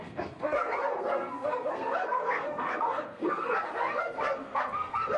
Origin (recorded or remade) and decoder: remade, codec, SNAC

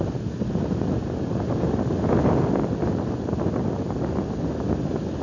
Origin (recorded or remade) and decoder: recorded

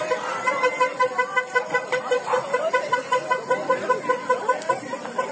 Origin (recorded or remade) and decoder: remade, vocoder, BigVGAN v2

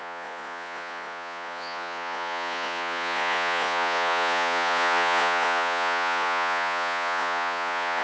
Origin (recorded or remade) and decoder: remade, vocoder, Vocos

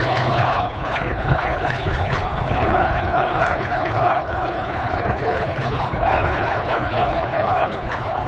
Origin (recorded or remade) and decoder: remade, codec, HILCodec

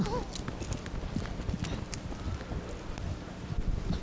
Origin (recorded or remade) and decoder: recorded